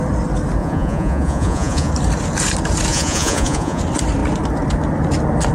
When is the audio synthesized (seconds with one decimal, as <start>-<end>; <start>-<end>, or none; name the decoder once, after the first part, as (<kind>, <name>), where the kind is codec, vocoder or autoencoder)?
0.6-1.9 (vocoder, Vocos); 2.9-3.8